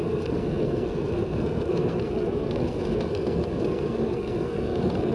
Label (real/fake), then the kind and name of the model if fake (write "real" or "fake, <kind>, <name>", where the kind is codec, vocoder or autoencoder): fake, codec, SNAC